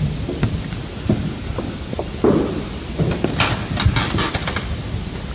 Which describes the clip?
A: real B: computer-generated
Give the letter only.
A